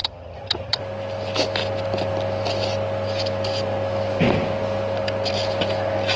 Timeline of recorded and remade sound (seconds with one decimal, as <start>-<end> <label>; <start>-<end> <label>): 0.0-0.8 remade; 0.8-6.2 recorded